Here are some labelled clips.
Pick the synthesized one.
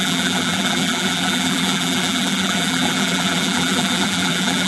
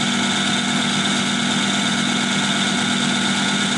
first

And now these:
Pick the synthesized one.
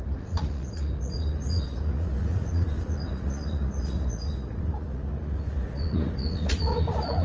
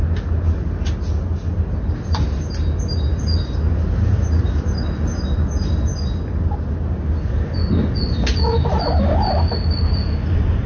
first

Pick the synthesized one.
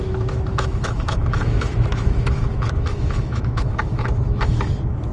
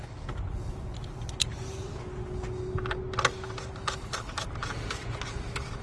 first